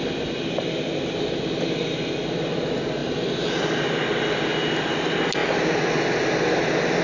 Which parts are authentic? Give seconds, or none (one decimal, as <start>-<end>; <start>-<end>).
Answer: 0.0-3.0; 3.9-7.0